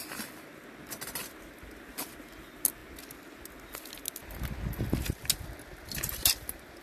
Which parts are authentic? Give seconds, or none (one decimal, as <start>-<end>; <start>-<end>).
0.0-6.8